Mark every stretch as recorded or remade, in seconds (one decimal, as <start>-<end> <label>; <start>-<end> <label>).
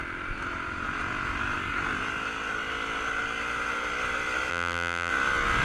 0.0-4.5 recorded; 4.5-5.1 remade; 5.1-5.6 recorded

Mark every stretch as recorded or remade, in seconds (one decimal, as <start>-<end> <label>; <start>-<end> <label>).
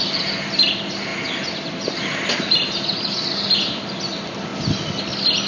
0.0-5.5 recorded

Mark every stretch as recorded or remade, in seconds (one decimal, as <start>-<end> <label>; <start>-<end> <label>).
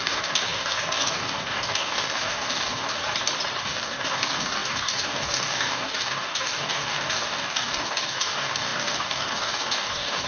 0.0-3.0 remade; 3.0-3.6 recorded; 3.6-10.3 remade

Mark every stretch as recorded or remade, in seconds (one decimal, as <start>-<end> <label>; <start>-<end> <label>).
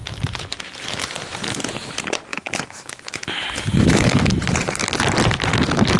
0.0-2.3 recorded; 2.3-4.2 remade; 4.2-6.0 recorded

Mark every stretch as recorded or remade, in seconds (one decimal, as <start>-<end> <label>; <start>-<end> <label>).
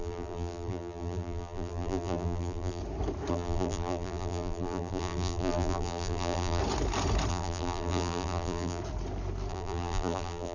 0.0-2.8 remade; 2.8-3.3 recorded; 3.3-6.6 remade; 6.6-7.3 recorded; 7.3-8.8 remade; 8.8-9.5 recorded; 9.5-10.5 remade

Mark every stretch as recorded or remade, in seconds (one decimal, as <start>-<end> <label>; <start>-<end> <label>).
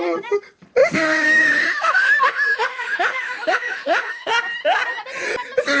0.0-0.8 recorded; 0.8-4.3 remade; 4.3-5.8 recorded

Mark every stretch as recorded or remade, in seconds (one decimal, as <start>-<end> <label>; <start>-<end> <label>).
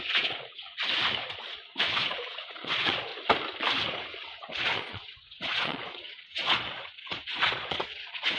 0.0-0.8 remade; 0.8-1.8 recorded; 1.8-3.1 remade; 3.1-4.6 recorded; 4.6-8.4 remade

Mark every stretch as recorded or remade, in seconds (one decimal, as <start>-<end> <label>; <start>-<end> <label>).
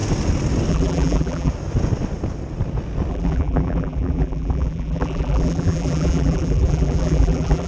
0.0-0.7 recorded; 0.7-1.5 remade; 1.5-3.1 recorded; 3.1-7.7 remade